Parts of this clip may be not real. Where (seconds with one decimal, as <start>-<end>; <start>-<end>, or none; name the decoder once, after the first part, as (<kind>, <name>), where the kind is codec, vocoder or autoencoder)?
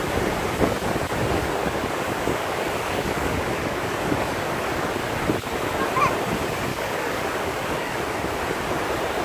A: 1.2-5.0 (codec, DAC); 6.7-8.4